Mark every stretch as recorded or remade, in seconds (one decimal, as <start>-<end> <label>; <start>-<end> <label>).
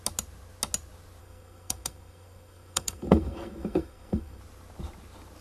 0.0-1.2 recorded; 1.2-4.4 remade; 4.4-5.4 recorded